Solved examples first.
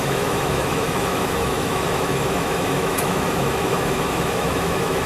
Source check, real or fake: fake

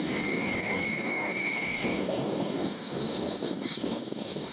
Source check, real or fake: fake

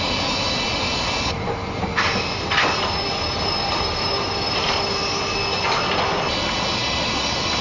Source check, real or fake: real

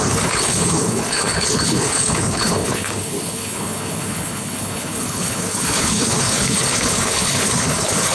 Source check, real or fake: fake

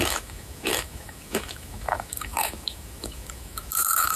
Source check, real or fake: fake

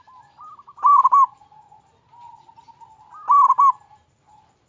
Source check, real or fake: real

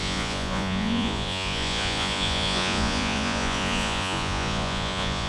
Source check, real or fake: fake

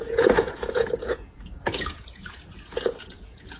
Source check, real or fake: fake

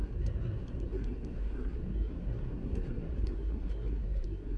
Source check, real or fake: fake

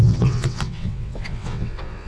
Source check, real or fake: fake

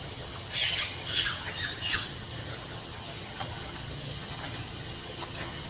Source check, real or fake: fake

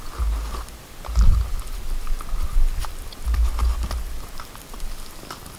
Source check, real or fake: real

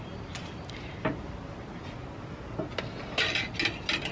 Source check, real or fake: real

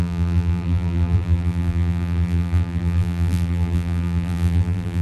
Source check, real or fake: fake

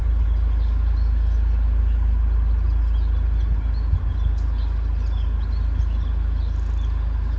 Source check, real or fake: real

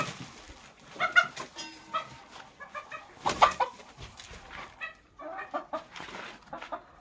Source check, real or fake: real